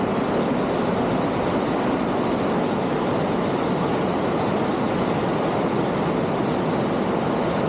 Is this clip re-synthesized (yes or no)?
no